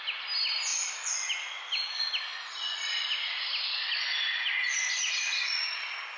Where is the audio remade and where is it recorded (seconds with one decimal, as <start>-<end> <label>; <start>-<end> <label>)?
0.0-6.2 recorded